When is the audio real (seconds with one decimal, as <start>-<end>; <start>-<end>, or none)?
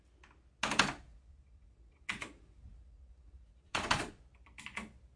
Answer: 0.0-1.1; 4.2-5.2